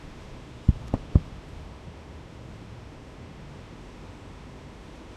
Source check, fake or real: fake